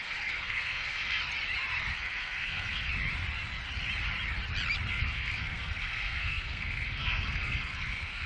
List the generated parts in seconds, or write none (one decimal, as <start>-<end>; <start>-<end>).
0.0-1.2; 1.9-2.9; 4.9-8.3